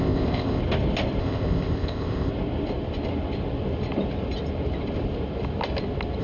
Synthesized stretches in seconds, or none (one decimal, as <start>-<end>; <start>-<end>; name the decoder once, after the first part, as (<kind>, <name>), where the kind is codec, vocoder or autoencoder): 0.0-0.6 (codec, ZipCodec); 1.2-2.3